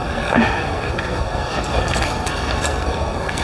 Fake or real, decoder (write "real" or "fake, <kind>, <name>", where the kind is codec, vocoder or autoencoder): fake, codec, SNAC